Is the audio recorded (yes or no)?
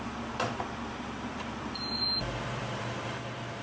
no